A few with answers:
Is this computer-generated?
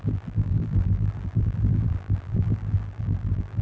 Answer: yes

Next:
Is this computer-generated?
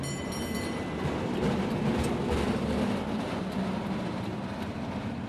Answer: no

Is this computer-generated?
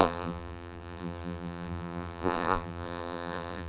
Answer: yes